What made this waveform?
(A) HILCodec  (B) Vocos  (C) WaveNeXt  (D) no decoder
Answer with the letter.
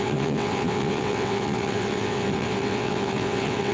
C